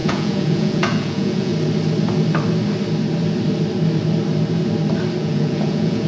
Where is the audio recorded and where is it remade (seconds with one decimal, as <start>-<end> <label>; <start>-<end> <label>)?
0.0-1.5 remade; 1.5-5.2 recorded; 5.2-6.1 remade

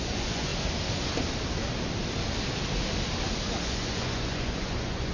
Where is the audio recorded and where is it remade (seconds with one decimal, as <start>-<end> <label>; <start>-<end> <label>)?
0.0-0.5 remade; 0.5-3.6 recorded; 3.6-5.1 remade

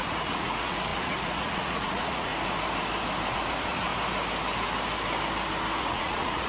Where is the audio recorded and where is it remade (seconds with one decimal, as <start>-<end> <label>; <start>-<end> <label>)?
0.0-2.3 remade; 2.3-3.3 recorded; 3.3-3.9 remade; 3.9-5.8 recorded; 5.8-6.5 remade

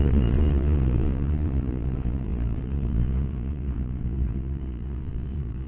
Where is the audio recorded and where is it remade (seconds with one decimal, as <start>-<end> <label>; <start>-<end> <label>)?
0.0-5.7 remade

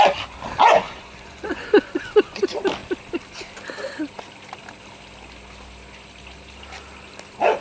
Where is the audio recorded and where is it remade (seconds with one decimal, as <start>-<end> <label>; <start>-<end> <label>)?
0.0-0.6 recorded; 0.6-2.4 remade; 2.4-7.6 recorded

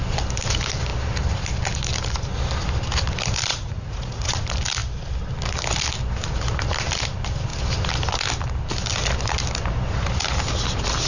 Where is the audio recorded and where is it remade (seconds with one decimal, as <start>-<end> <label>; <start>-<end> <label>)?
0.0-3.5 recorded; 3.5-4.3 remade; 4.3-11.1 recorded